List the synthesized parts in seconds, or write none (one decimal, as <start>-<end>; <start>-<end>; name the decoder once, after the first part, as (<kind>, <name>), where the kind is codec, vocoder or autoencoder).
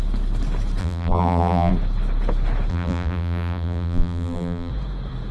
0.8-1.7 (vocoder, BigVGAN v2); 2.7-4.7